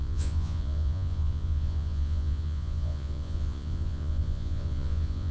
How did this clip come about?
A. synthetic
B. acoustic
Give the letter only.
A